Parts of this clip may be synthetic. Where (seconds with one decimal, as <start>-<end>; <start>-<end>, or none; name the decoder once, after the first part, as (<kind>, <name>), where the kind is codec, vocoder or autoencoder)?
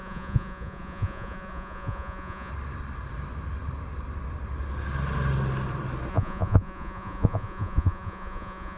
0.0-2.5 (vocoder, Vocos); 6.1-8.8